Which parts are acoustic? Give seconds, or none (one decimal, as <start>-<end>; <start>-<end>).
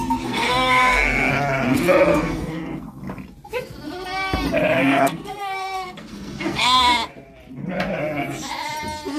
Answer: 1.3-2.1; 3.0-4.8; 6.8-9.2